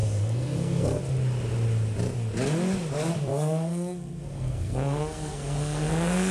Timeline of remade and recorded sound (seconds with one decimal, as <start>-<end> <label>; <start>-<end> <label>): 0.0-1.0 remade; 1.0-3.3 recorded; 3.3-6.3 remade